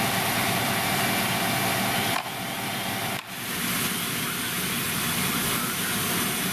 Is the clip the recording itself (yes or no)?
yes